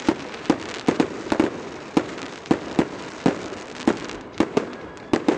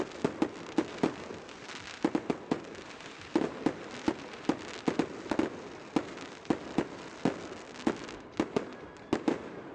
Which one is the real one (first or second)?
second